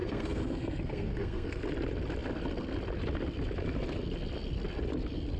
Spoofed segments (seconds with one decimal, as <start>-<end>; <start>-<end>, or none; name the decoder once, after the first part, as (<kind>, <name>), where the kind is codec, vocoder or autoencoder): 0.0-1.6 (codec, SNAC)

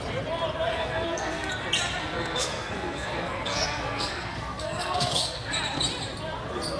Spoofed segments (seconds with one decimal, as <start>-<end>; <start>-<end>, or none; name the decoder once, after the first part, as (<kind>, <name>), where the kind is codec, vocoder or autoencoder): 0.7-1.5 (codec, SNAC); 2.0-5.5

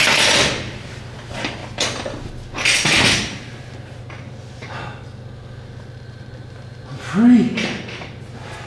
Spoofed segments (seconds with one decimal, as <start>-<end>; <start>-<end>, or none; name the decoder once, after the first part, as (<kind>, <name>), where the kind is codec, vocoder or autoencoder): none

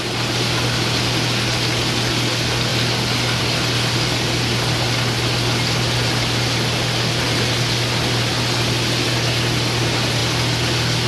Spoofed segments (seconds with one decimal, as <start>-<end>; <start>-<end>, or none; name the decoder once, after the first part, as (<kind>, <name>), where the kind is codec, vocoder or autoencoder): none